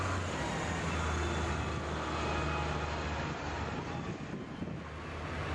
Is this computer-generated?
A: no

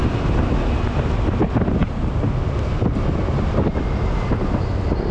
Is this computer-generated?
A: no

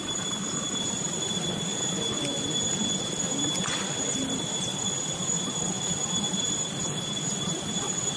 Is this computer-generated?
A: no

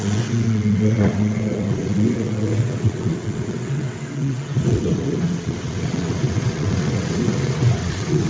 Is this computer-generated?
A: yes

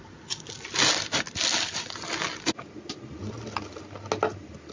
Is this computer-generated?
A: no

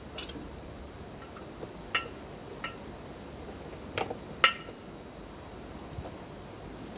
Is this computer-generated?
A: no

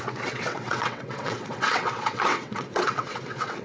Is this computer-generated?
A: yes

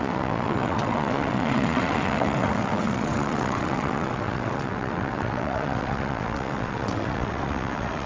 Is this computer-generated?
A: yes